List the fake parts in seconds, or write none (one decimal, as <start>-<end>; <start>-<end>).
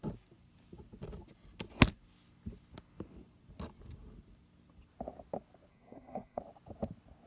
5.7-6.4